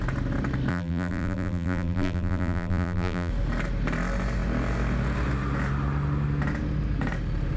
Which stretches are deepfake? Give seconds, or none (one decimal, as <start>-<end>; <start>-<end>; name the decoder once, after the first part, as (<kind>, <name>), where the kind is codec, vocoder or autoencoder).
0.7-3.3 (vocoder, BigVGAN v2)